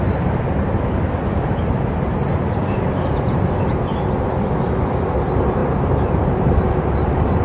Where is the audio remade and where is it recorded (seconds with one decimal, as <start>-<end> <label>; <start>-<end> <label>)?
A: 0.0-1.3 recorded; 1.3-4.1 remade; 4.1-5.6 recorded; 5.6-7.4 remade